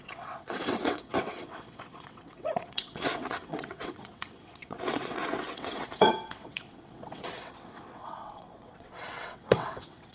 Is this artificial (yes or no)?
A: yes